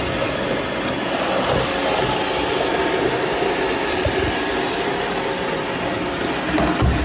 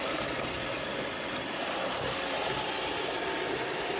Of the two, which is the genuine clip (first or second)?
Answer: first